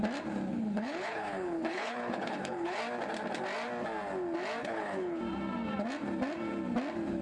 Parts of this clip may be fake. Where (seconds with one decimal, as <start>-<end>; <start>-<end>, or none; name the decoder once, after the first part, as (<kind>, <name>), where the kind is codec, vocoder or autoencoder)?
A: 0.5-2.8 (codec, HILCodec); 4.6-5.2